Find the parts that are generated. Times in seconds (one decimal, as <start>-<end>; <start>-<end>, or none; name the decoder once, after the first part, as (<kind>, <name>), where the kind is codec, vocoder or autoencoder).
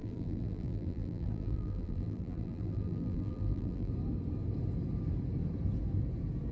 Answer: 0.0-3.9 (vocoder, BigVGAN v2)